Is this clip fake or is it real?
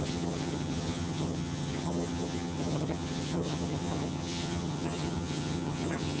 fake